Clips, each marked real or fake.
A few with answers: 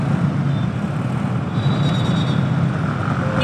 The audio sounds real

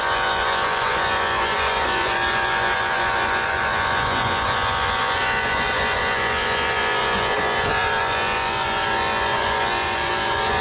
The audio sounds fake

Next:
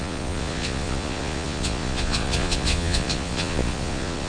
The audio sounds fake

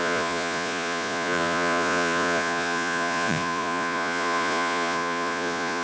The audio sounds fake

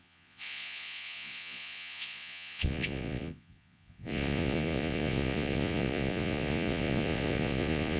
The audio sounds fake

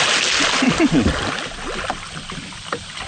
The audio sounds real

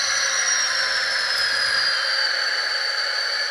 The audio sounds real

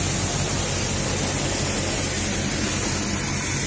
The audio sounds real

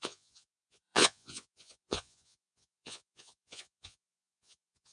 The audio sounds fake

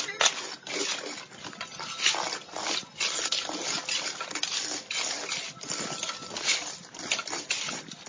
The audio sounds real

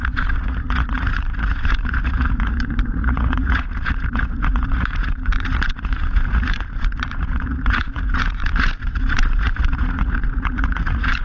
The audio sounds fake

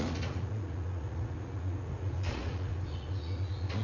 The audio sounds fake